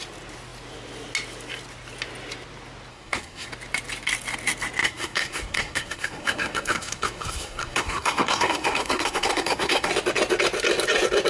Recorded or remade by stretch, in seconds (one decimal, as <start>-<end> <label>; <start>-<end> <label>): 0.0-2.9 recorded; 2.9-3.5 remade; 3.5-4.8 recorded; 4.8-9.9 remade; 9.9-11.3 recorded